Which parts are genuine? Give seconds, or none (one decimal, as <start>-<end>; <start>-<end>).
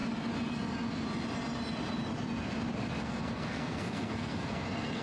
0.0-3.0